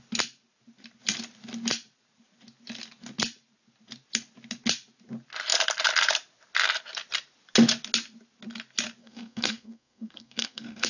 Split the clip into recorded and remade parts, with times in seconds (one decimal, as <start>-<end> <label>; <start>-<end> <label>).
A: 0.0-9.0 recorded; 9.0-10.9 remade